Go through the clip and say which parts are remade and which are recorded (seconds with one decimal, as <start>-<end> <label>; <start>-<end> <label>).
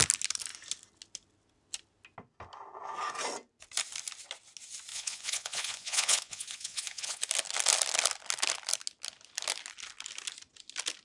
0.0-4.9 recorded; 4.9-7.2 remade; 7.2-11.0 recorded